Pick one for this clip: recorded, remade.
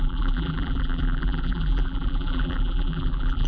remade